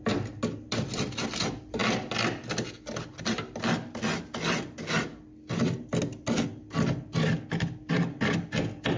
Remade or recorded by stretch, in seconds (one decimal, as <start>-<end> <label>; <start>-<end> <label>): 0.0-9.0 recorded